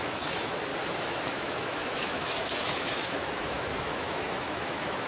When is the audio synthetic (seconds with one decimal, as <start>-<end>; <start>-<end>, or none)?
0.0-0.7; 1.3-5.1